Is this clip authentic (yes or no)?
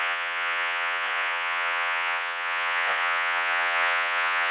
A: no